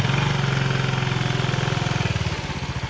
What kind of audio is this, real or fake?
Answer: real